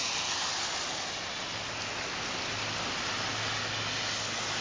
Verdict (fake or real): real